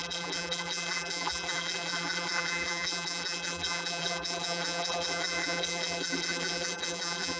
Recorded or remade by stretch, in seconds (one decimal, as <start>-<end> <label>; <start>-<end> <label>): 0.0-7.4 remade